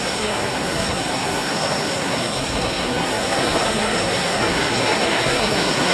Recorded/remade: remade